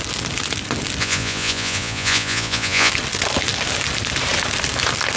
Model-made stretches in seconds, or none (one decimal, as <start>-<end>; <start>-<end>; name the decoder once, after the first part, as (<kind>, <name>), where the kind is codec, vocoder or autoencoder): 1.0-2.9 (vocoder, Vocos)